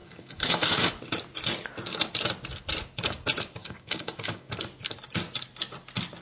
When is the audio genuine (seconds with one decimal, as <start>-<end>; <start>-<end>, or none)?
0.9-3.6; 4.5-6.2